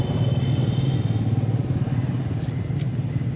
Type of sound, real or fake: real